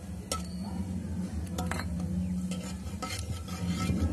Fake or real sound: real